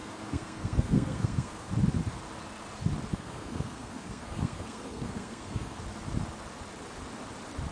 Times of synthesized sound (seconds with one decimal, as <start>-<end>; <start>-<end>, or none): 0.0-1.7; 3.1-5.8